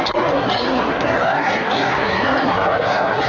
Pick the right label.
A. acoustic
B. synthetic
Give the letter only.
B